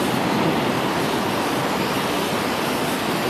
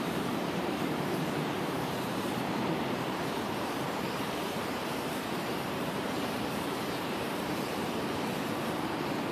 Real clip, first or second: first